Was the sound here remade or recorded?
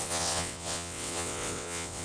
remade